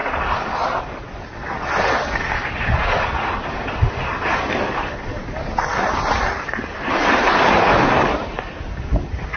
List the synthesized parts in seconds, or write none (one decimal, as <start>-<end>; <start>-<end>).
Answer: none